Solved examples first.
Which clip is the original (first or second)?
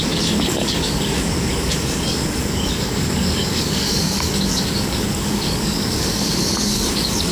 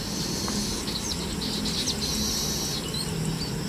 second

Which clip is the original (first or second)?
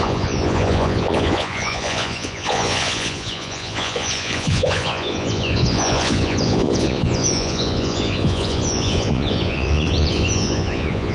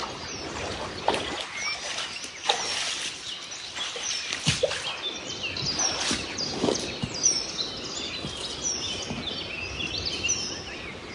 second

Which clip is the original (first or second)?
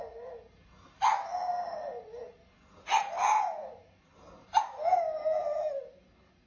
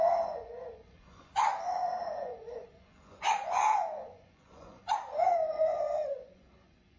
first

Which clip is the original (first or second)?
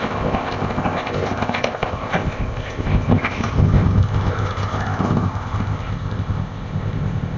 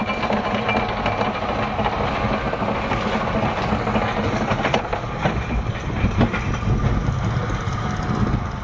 second